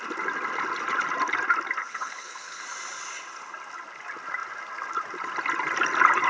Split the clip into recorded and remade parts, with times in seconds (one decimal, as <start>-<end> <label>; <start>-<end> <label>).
0.0-1.8 recorded; 1.8-2.6 remade; 2.6-6.3 recorded